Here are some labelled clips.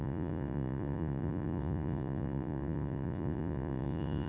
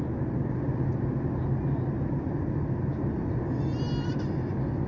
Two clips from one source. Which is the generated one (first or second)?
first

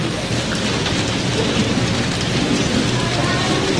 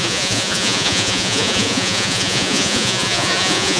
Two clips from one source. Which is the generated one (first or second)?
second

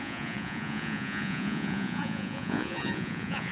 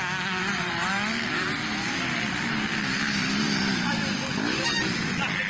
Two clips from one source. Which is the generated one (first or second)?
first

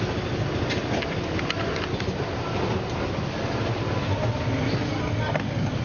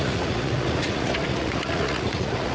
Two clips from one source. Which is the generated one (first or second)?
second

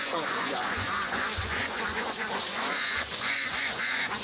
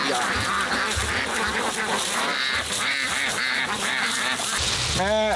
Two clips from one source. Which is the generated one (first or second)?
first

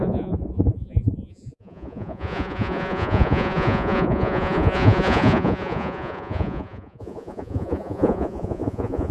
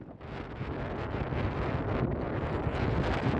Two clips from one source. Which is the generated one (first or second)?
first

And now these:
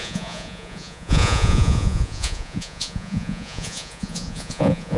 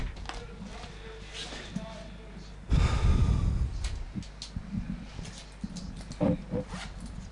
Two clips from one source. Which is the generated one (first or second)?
first